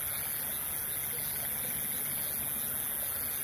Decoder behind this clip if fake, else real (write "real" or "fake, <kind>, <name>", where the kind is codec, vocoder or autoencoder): real